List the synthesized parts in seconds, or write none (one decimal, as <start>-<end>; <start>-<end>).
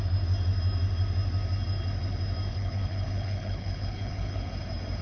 2.5-4.5